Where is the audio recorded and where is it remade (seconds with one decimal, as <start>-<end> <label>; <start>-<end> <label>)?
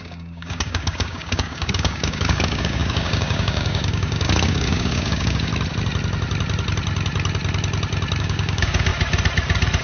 0.0-5.5 remade; 5.5-8.2 recorded; 8.2-8.9 remade; 8.9-9.8 recorded